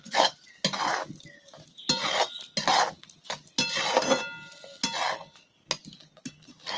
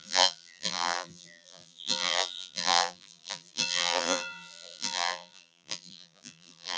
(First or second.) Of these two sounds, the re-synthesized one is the second